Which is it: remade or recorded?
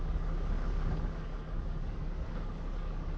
remade